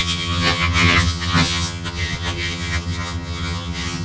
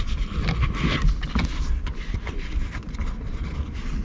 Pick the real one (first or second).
second